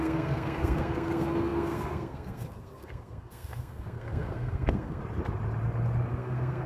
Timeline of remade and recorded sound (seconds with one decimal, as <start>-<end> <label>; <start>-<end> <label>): 0.0-5.0 remade; 5.0-6.1 recorded; 6.1-6.7 remade